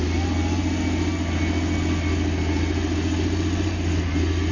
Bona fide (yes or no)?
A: yes